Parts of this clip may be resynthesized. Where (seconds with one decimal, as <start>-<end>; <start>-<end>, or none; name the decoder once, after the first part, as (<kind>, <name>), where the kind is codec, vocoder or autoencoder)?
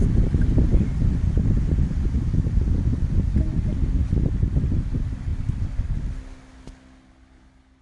none